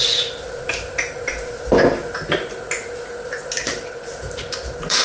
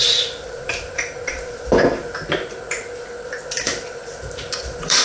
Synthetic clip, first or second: second